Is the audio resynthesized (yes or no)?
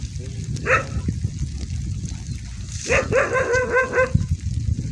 no